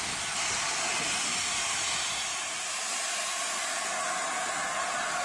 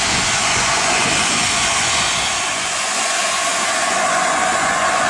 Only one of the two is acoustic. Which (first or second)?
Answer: first